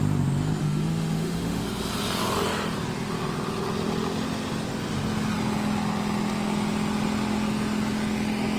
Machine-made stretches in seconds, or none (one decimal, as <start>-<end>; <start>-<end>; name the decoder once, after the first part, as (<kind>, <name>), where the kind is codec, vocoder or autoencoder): 0.6-1.6 (autoencoder, DAC-VAE)